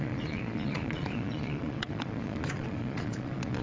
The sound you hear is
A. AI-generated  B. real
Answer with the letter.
A